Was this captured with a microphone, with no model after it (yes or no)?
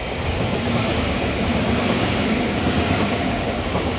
no